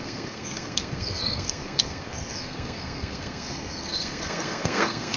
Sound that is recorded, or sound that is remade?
remade